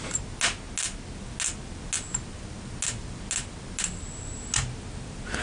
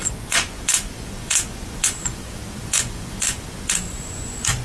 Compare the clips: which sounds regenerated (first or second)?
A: second